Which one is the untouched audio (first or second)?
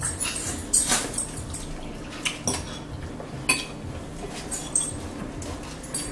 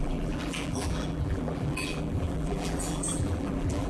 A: first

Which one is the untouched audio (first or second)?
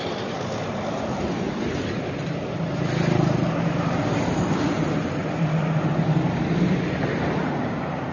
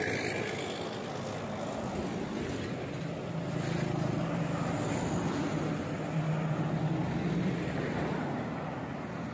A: second